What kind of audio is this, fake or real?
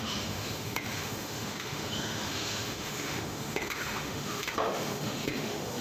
fake